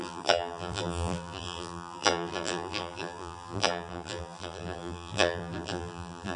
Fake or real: fake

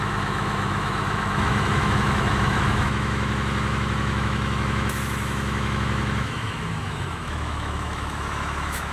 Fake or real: fake